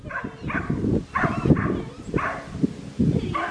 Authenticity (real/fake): real